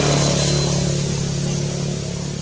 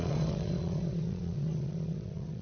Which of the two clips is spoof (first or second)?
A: second